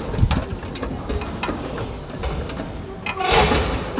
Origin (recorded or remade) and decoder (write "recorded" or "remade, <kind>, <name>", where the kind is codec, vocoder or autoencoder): recorded